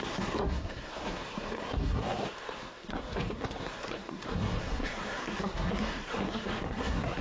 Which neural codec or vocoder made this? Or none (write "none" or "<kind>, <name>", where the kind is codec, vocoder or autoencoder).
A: codec, SNAC